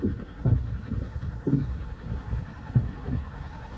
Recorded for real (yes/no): no